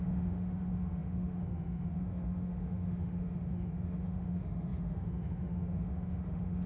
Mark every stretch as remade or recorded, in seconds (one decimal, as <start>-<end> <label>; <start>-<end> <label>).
0.0-6.7 remade